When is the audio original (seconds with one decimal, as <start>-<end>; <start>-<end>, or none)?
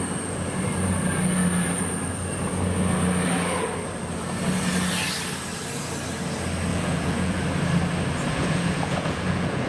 0.0-6.7; 7.4-8.3